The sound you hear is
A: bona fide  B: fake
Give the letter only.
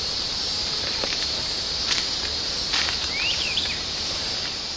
B